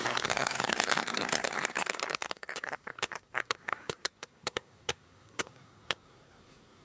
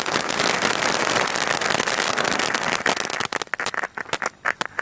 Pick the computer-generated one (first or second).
first